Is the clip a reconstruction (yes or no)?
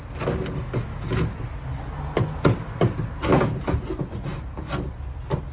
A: no